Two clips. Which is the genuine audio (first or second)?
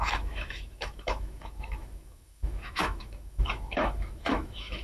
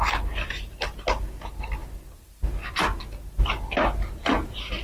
second